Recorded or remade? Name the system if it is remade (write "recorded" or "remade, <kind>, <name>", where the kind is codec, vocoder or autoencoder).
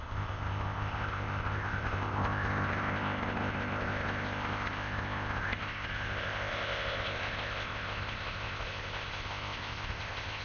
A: remade, codec, ZipCodec